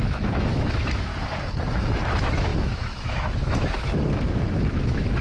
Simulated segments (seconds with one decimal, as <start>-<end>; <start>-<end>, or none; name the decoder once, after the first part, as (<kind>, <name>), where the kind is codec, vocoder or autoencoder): 0.0-1.1 (autoencoder, DAC-VAE); 1.7-5.2